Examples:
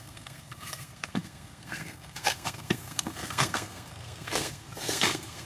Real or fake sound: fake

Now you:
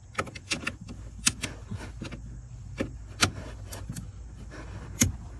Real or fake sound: real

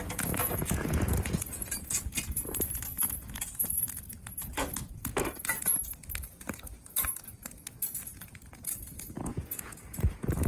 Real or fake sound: fake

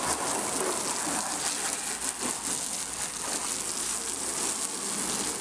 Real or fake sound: real